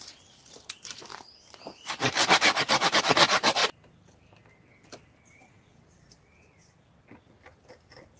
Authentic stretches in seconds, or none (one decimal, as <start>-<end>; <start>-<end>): 0.0-8.2